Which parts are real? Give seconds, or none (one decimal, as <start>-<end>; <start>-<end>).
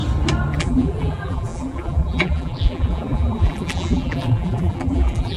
0.0-0.6